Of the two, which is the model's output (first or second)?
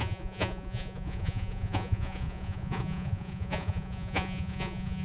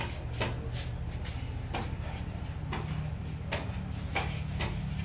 first